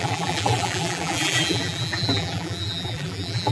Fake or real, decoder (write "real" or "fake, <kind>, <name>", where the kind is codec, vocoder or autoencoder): fake, vocoder, BigVGAN v2